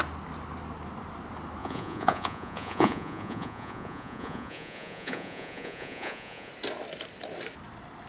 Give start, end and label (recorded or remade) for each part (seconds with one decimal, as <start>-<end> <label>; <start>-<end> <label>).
0.0-1.6 recorded; 1.6-6.5 remade; 6.5-8.1 recorded